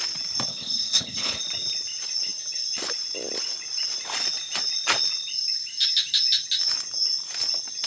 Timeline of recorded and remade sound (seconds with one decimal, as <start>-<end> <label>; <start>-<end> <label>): 0.0-0.5 recorded; 0.5-1.4 remade; 1.4-7.9 recorded